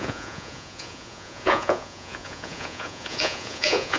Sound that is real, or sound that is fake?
fake